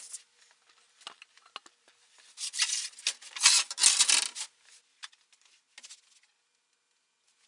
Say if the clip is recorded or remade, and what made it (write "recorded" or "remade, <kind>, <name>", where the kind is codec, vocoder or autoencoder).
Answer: recorded